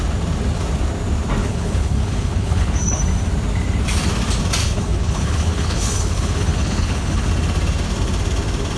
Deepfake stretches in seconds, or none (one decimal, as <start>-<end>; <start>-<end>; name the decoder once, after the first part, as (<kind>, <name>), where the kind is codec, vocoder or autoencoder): 1.4-3.0 (codec, HILCodec); 4.6-7.3